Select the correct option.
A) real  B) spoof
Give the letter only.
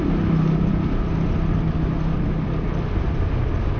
A